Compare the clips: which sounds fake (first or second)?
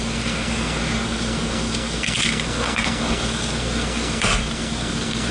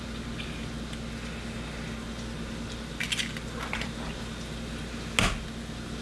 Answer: first